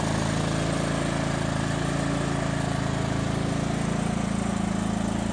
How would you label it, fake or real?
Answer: real